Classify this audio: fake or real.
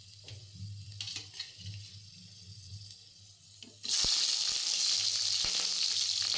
real